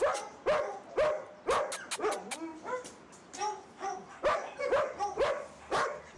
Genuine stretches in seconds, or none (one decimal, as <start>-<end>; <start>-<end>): 0.0-6.2